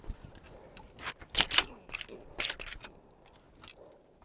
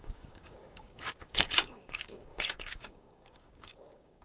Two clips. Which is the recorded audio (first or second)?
first